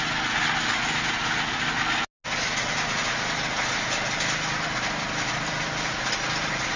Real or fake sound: real